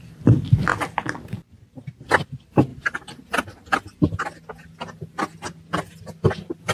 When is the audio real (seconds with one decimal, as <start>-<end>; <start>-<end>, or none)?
0.7-1.5; 2.7-6.3